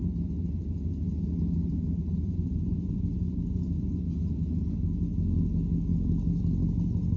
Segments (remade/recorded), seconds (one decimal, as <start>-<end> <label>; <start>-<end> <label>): 0.0-1.6 recorded; 1.6-2.9 remade; 2.9-7.2 recorded